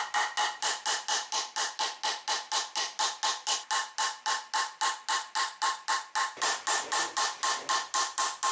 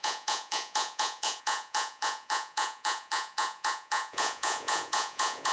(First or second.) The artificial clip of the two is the second